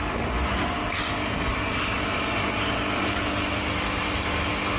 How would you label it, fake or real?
real